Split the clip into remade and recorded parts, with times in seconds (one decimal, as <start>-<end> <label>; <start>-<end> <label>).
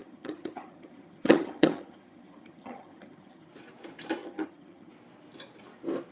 0.0-3.5 remade; 3.5-4.2 recorded; 4.2-4.9 remade; 4.9-6.1 recorded